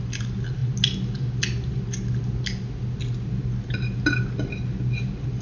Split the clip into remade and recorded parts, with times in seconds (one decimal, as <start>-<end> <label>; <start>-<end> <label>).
0.0-5.4 recorded